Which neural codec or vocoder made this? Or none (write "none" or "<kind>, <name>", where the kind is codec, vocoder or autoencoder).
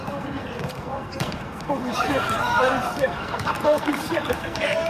codec, SNAC